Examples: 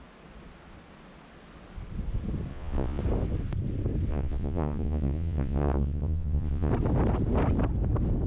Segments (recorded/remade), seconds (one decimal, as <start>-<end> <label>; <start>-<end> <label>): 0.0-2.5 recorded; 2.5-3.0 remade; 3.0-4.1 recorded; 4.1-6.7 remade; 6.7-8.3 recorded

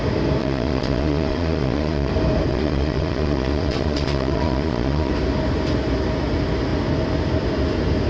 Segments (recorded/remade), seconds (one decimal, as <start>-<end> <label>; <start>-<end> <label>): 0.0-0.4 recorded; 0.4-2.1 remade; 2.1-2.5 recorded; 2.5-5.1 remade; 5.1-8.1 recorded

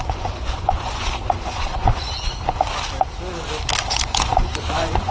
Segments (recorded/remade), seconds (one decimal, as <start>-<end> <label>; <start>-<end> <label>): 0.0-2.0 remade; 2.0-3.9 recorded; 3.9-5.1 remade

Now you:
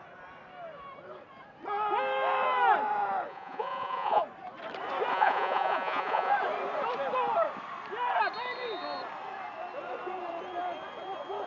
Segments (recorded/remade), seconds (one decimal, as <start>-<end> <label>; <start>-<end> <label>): 0.0-3.3 recorded; 3.3-4.2 remade; 4.2-5.1 recorded; 5.1-6.3 remade; 6.3-11.5 recorded

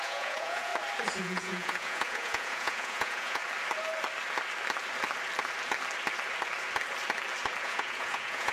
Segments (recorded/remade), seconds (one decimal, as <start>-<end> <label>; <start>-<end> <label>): 0.0-0.7 remade; 0.7-1.2 recorded; 1.2-3.4 remade; 3.4-7.6 recorded; 7.6-8.5 remade

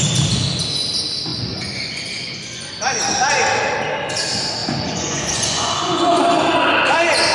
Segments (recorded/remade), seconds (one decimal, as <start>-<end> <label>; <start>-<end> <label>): 0.0-1.3 recorded; 1.3-2.7 remade; 2.7-4.6 recorded; 4.6-6.2 remade; 6.2-7.3 recorded